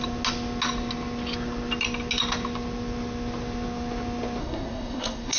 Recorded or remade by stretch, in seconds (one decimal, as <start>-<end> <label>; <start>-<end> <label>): 0.0-4.4 recorded; 4.4-5.4 remade